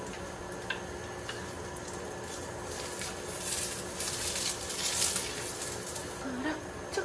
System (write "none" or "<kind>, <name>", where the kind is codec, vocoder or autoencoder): none